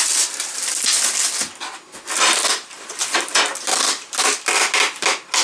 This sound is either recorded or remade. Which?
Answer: recorded